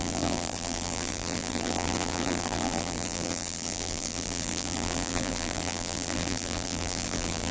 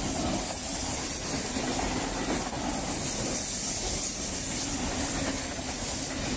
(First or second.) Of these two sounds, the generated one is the first